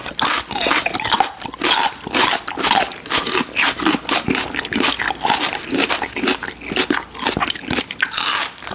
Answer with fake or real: real